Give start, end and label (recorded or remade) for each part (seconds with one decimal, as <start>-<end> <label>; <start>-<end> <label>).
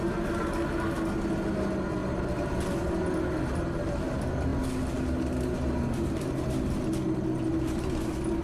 0.0-8.4 recorded